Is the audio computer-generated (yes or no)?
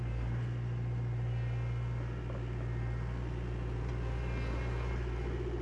no